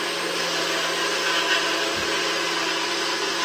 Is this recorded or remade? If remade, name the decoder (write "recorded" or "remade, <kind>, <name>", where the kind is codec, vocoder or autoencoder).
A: recorded